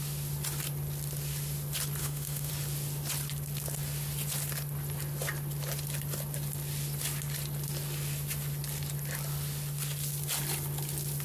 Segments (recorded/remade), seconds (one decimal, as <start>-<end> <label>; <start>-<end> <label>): 0.0-2.0 recorded; 2.0-2.5 remade; 2.5-11.2 recorded